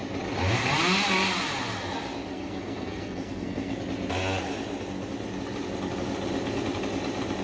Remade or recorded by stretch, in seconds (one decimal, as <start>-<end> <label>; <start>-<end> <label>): 0.0-2.3 recorded; 2.3-3.8 remade; 3.8-7.4 recorded